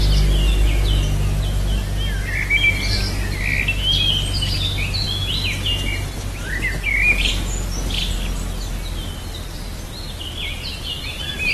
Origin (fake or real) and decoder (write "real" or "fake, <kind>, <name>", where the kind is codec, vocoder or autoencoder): real